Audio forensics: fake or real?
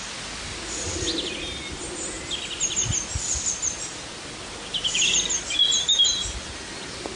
real